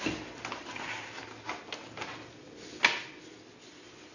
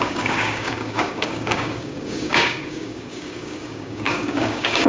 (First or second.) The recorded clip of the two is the first